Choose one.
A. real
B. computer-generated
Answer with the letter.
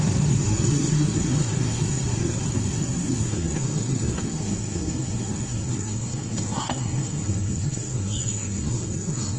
B